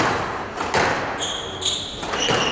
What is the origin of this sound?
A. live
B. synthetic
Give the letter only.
A